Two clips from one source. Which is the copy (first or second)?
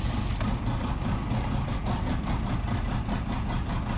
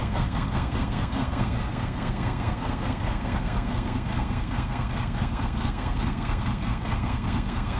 second